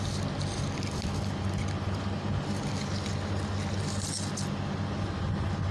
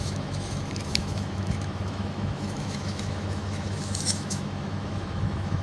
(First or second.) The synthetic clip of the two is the second